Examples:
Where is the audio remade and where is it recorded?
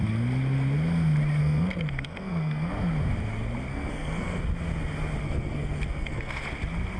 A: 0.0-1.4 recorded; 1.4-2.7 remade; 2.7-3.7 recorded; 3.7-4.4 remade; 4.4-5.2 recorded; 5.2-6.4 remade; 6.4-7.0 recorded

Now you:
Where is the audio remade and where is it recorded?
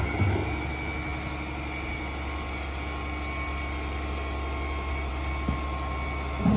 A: 0.0-6.6 recorded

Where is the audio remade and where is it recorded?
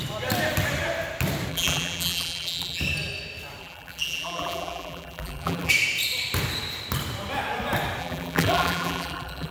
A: 0.0-1.5 recorded; 1.5-2.8 remade; 2.8-3.6 recorded; 3.6-5.7 remade; 5.7-8.0 recorded; 8.0-9.5 remade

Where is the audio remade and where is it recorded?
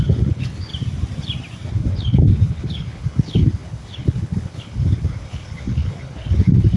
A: 0.0-0.7 remade; 0.7-1.7 recorded; 1.7-6.8 remade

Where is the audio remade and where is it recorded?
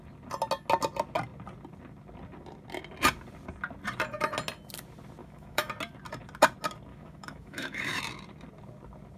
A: 0.0-5.2 recorded; 5.2-5.7 remade; 5.7-6.9 recorded; 6.9-8.0 remade; 8.0-9.2 recorded